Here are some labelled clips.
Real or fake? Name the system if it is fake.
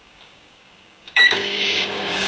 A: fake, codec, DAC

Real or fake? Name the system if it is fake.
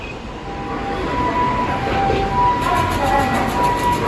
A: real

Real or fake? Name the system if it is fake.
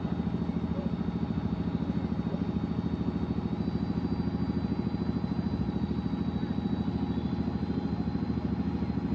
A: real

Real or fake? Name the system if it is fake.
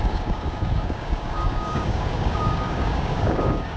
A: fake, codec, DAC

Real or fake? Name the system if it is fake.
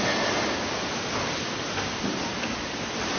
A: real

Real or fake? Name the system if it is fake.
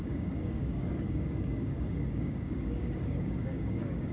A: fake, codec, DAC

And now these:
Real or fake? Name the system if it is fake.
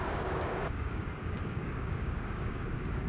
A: fake, codec, DAC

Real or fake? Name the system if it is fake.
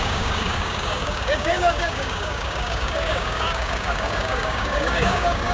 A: fake, codec, DAC